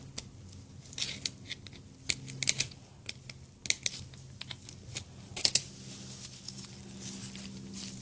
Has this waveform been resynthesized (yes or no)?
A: no